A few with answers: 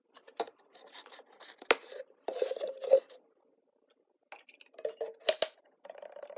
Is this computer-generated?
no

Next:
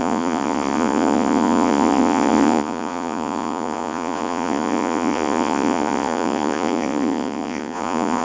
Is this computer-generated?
yes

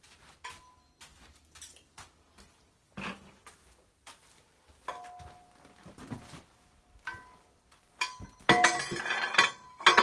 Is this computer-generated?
no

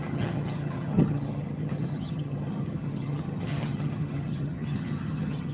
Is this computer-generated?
yes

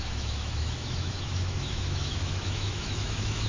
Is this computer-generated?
yes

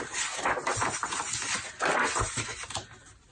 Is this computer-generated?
no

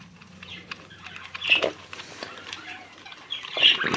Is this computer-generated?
yes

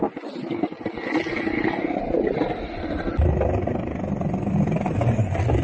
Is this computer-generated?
no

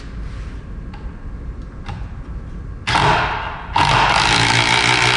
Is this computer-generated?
no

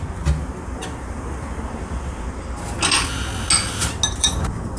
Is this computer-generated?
no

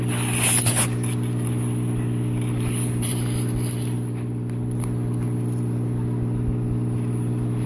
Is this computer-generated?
yes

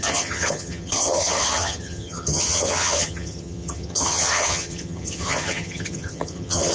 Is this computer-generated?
yes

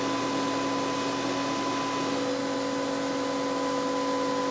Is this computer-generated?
no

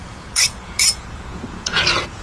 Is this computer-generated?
yes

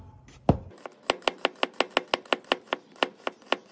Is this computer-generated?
no